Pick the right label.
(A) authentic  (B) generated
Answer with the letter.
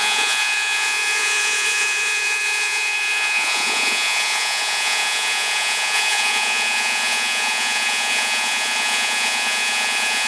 B